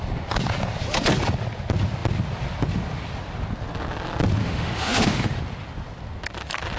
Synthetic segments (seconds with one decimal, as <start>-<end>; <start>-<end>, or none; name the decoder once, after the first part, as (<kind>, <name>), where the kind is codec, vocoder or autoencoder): 4.4-5.4 (autoencoder, DAC-VAE)